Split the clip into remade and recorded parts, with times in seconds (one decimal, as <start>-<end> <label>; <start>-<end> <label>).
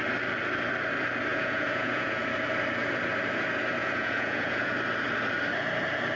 0.0-1.3 recorded; 1.3-2.2 remade; 2.2-3.8 recorded; 3.8-4.7 remade; 4.7-6.2 recorded